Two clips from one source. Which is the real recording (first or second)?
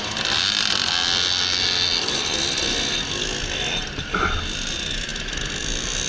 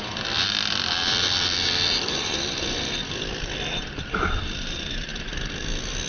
first